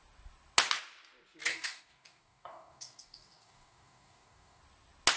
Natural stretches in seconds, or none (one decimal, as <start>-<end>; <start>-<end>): 0.0-1.5; 4.6-5.2